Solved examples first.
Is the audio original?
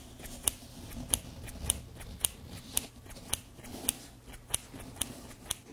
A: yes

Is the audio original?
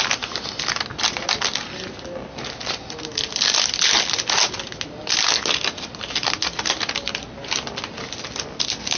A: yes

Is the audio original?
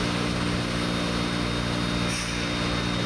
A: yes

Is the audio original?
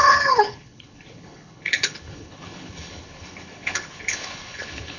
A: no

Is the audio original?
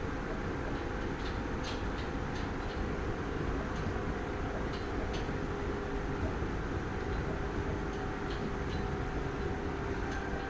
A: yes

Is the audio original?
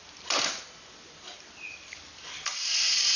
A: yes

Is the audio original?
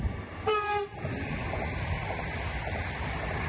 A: yes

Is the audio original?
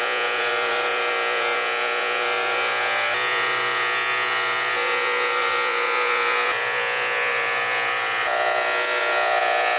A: no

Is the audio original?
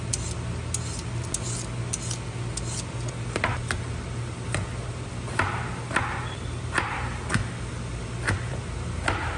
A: yes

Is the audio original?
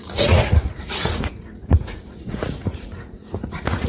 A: no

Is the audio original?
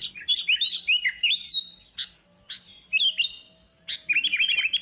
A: yes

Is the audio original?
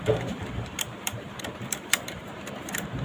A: no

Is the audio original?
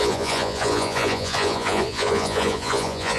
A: no